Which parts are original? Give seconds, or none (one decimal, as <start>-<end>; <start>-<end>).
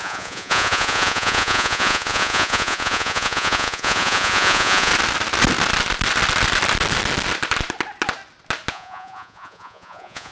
4.9-8.7